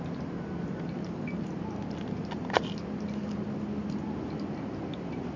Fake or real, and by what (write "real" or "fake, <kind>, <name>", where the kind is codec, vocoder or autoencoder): real